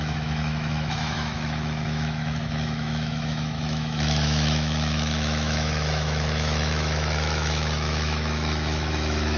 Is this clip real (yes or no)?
no